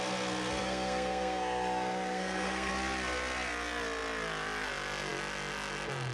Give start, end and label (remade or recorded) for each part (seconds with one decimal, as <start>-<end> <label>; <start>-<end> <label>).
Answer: 0.0-0.6 recorded; 0.6-2.7 remade; 2.7-6.1 recorded